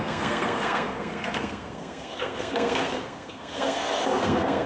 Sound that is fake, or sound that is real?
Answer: fake